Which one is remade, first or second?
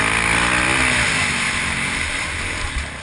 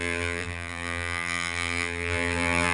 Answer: second